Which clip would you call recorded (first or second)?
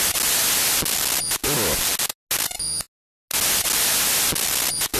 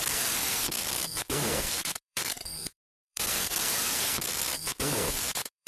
first